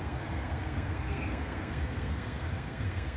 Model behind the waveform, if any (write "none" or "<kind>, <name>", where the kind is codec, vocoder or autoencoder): codec, SNAC